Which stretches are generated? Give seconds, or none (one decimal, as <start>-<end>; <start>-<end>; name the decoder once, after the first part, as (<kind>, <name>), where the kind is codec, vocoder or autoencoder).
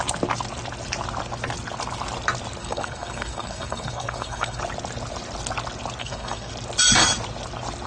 2.6-4.6 (codec, SNAC); 6.0-6.5